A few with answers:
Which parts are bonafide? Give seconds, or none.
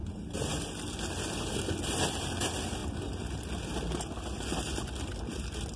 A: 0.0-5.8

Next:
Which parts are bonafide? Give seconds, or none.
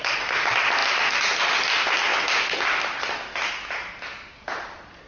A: 0.0-5.1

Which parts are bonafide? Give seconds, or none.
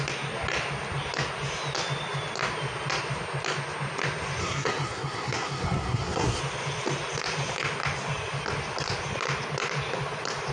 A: 0.0-4.4; 6.4-10.5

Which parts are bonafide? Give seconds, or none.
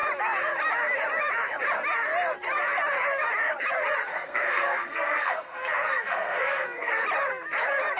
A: 0.0-4.1; 6.9-8.0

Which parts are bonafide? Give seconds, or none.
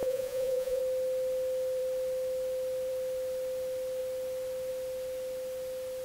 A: 0.8-6.0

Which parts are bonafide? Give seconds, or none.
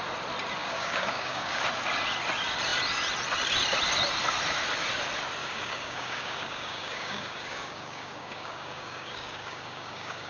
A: 0.0-0.6; 1.6-5.4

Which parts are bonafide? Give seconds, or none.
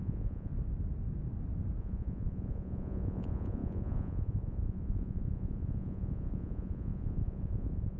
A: 0.5-1.8